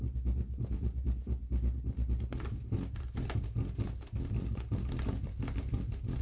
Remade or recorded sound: recorded